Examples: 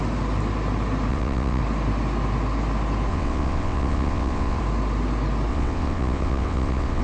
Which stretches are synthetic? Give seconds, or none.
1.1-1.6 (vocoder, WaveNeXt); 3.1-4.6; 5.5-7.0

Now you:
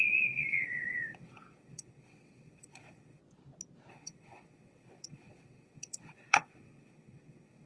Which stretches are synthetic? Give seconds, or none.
0.0-3.2 (vocoder, WaveNeXt); 3.9-7.7

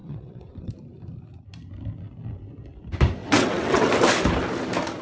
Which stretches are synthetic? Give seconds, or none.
0.0-0.7 (vocoder, WaveNeXt); 3.2-3.9

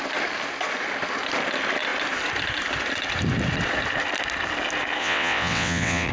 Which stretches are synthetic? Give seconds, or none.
5.0-6.1 (vocoder, WaveNeXt)